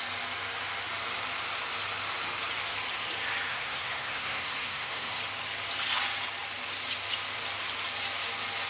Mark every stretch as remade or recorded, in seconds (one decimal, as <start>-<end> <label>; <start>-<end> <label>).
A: 0.0-3.5 recorded; 3.5-5.2 remade; 5.2-8.7 recorded